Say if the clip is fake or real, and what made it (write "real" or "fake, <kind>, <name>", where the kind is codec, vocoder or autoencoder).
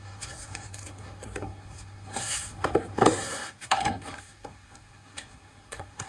fake, codec, SNAC